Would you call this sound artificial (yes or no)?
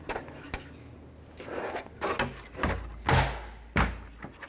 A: no